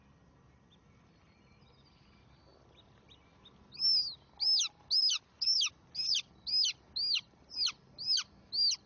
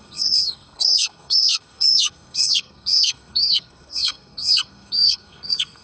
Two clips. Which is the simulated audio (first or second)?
second